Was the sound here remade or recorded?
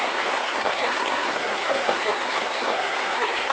remade